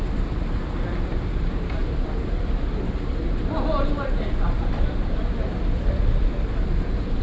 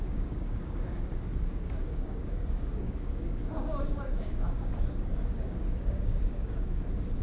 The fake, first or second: second